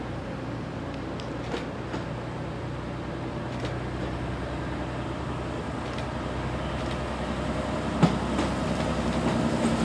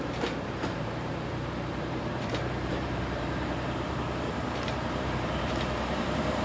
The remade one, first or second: second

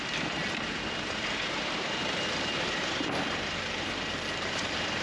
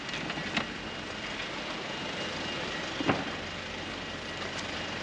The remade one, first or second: first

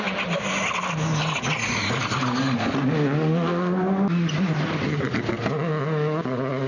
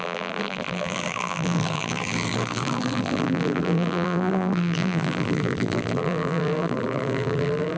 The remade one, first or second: second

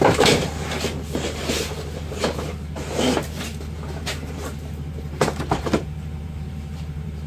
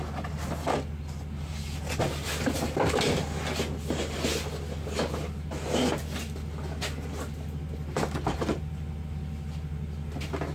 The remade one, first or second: first